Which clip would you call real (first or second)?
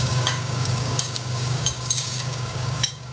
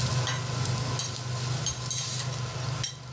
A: second